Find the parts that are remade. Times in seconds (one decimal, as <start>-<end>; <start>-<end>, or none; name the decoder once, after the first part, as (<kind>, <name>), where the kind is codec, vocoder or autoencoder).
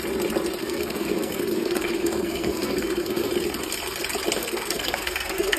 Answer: 0.6-3.3 (codec, SNAC); 4.4-5.6